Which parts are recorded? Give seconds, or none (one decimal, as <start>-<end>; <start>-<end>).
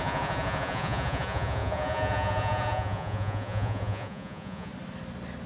4.7-5.5